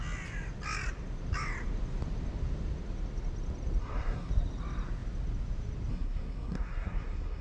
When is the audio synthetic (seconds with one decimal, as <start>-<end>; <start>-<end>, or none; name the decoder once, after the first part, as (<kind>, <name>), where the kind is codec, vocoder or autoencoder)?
3.8-4.3 (codec, SNAC); 5.9-7.4